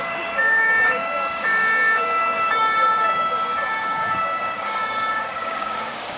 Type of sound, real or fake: fake